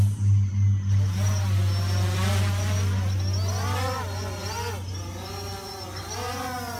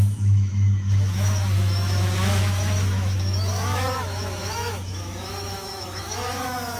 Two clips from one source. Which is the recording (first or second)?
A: first